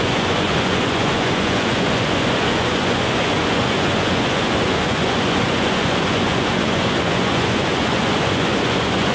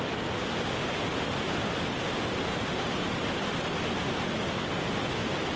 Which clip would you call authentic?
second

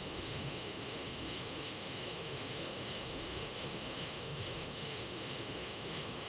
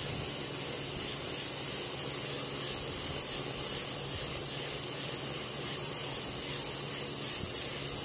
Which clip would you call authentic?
second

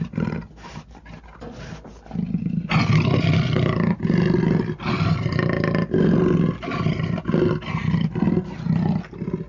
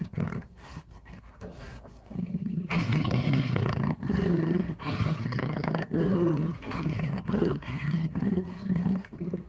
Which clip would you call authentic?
first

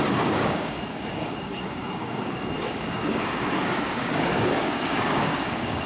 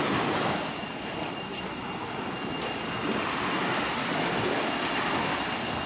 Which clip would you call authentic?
second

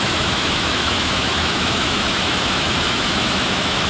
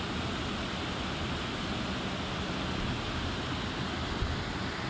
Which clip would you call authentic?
second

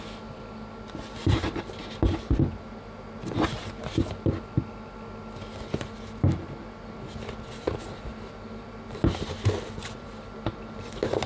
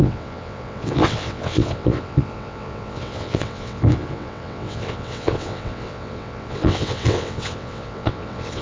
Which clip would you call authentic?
first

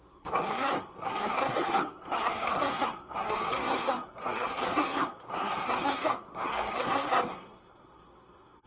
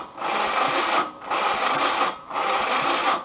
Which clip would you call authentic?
second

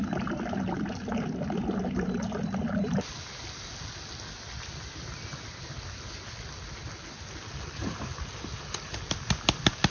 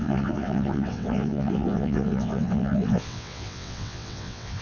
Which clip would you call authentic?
first